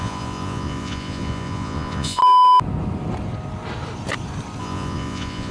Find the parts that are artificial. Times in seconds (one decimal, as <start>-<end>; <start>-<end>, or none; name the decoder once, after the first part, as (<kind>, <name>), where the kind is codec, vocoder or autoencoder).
0.0-2.2 (vocoder, Vocos); 4.6-5.5